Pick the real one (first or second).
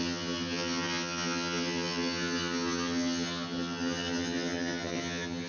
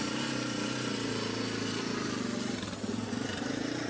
second